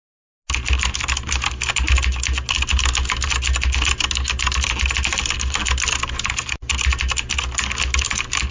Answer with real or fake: real